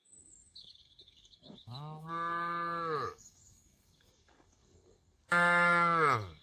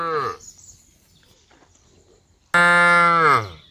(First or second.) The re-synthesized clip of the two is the first